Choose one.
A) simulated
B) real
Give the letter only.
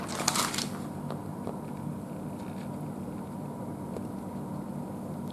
B